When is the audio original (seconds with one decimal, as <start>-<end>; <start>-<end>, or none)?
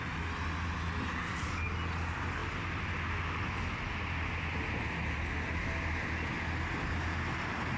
0.0-7.8